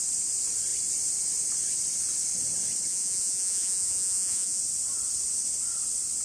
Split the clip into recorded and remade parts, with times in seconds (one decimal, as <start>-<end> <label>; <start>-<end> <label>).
0.0-2.9 recorded; 2.9-4.6 remade; 4.6-6.2 recorded

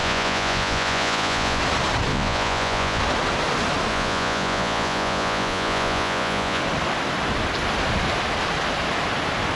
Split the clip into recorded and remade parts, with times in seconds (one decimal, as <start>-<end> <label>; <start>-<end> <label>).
0.0-1.6 remade; 1.6-2.1 recorded; 2.1-3.0 remade; 3.0-3.9 recorded; 3.9-6.6 remade; 6.6-9.6 recorded

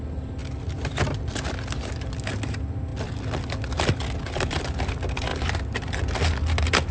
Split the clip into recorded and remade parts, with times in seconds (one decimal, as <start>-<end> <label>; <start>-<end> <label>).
0.0-6.9 recorded

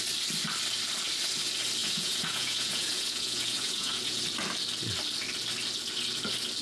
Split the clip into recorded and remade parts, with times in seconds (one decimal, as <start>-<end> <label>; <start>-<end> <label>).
0.0-1.8 recorded; 1.8-4.2 remade; 4.2-6.6 recorded

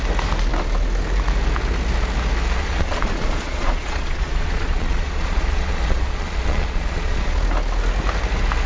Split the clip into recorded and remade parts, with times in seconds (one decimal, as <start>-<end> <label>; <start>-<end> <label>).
0.0-2.6 recorded; 2.6-7.4 remade; 7.4-8.7 recorded

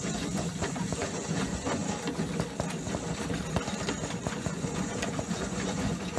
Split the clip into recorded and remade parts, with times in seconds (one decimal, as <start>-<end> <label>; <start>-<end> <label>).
0.0-1.8 remade; 1.8-4.2 recorded; 4.2-6.2 remade

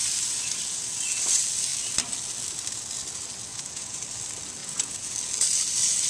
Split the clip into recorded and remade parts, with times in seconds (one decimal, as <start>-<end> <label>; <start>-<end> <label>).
0.0-3.5 recorded; 3.5-4.0 remade; 4.0-4.6 recorded; 4.6-5.1 remade; 5.1-6.1 recorded